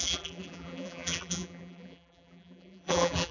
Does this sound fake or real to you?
fake